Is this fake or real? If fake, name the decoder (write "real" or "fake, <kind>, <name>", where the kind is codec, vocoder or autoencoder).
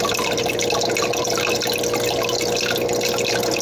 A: real